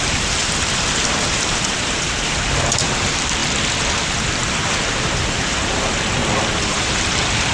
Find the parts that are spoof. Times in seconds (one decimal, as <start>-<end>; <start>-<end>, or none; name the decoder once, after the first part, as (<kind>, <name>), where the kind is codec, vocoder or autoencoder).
0.0-3.4 (vocoder, BigVGAN v2); 4.0-6.2; 6.7-7.5